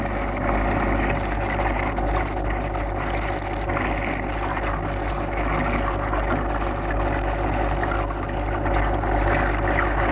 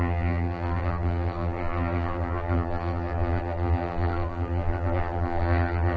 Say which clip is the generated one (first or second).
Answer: second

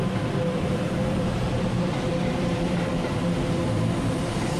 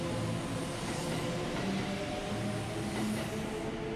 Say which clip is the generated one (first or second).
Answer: first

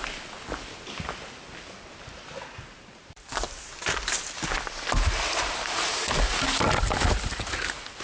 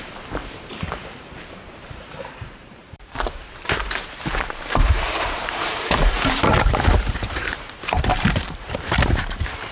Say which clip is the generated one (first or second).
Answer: second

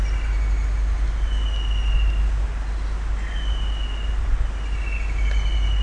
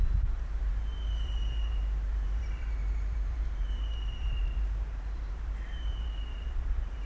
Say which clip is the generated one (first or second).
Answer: second